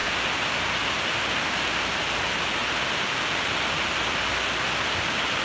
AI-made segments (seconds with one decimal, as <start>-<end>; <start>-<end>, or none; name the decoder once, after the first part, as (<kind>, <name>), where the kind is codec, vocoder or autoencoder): none